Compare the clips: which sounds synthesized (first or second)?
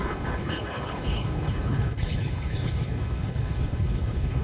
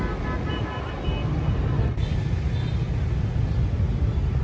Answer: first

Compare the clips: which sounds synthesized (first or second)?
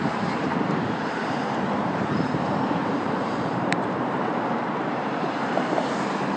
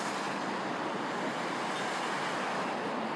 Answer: first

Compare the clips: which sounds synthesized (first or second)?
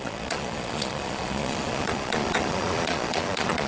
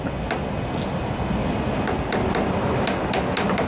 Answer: first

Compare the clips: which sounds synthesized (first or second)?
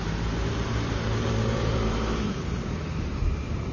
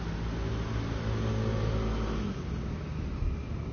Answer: first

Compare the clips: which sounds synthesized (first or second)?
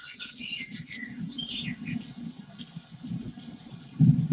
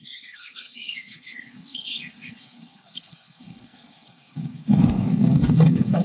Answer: second